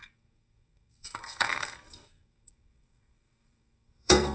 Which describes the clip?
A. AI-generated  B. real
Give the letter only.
A